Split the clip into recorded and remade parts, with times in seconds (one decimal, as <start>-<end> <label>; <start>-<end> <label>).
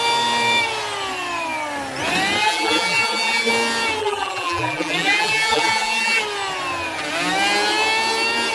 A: 0.0-2.4 recorded; 2.4-3.5 remade; 3.5-4.0 recorded; 4.0-6.2 remade; 6.2-8.5 recorded